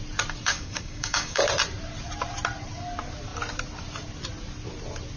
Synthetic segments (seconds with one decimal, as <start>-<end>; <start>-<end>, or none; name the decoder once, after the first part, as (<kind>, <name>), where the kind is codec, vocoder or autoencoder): 0.5-1.4 (codec, DAC)